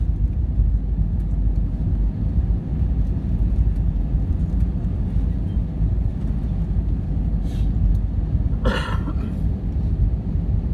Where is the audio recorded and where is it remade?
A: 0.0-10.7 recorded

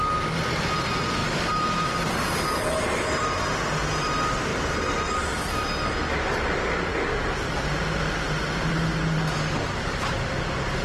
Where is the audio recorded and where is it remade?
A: 0.0-1.2 recorded; 1.2-2.1 remade; 2.1-10.8 recorded

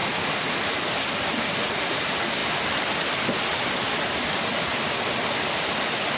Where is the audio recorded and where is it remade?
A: 0.0-2.4 recorded; 2.4-3.0 remade; 3.0-6.2 recorded